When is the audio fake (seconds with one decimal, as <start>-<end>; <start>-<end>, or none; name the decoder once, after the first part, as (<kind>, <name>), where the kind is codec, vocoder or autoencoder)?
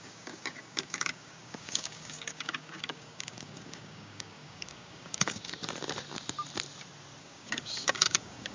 0.0-5.6 (codec, DAC); 7.2-8.5